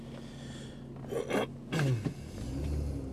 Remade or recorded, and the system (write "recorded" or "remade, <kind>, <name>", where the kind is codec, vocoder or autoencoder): recorded